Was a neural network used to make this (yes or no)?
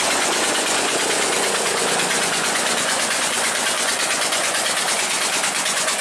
yes